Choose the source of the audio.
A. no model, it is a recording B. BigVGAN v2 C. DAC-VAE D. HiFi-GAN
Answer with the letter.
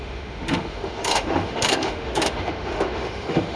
C